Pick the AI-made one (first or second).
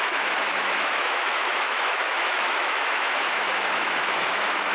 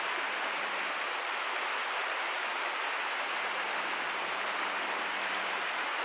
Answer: first